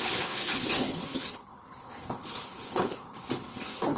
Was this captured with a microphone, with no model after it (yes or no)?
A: no